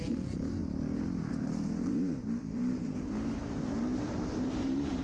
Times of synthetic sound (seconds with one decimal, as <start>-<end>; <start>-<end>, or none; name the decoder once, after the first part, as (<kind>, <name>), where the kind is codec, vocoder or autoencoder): 0.0-0.6 (vocoder, BigVGAN v2); 1.3-5.0